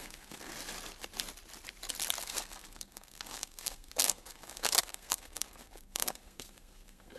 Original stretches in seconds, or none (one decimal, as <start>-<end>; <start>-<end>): 0.5-2.2